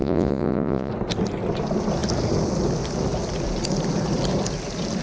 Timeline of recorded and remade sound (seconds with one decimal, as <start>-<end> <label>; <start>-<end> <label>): 0.0-0.9 remade; 0.9-5.0 recorded